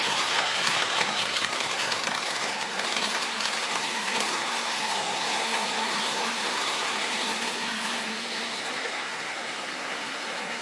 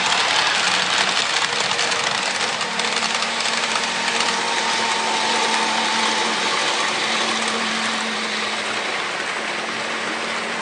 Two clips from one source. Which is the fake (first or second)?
first